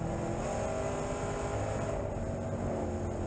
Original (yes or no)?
yes